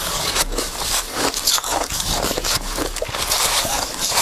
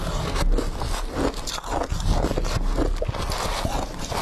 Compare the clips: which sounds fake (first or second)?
first